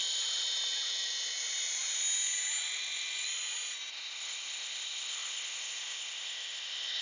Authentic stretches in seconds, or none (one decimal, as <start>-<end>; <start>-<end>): 0.0-3.9